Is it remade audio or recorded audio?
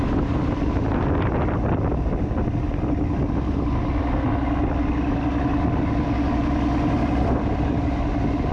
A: recorded